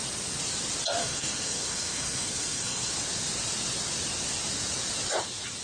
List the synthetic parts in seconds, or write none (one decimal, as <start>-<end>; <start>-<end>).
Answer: 1.0-2.9